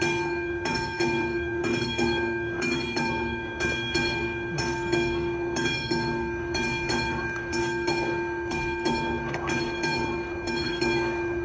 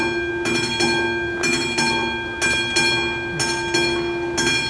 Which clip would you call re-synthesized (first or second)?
first